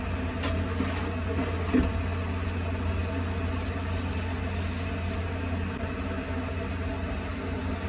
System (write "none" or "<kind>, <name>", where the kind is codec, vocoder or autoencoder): none